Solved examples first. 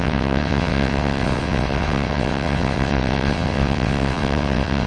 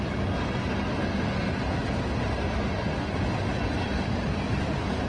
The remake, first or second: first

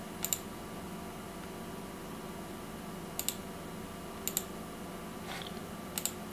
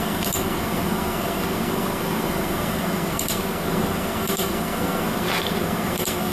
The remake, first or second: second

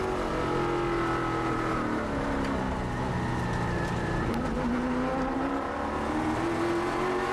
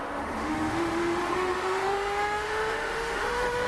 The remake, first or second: second